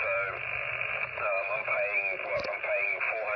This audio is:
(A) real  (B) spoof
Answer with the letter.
A